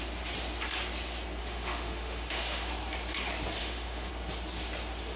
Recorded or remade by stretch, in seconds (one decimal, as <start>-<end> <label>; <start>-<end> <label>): 0.0-1.4 recorded; 1.4-2.7 remade; 2.7-3.6 recorded; 3.6-4.1 remade; 4.1-5.2 recorded